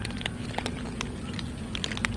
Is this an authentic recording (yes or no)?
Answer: yes